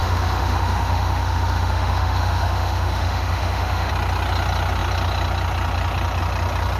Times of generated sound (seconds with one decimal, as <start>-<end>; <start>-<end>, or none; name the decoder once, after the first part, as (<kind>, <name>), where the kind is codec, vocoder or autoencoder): 0.0-3.9 (autoencoder, DAC-VAE)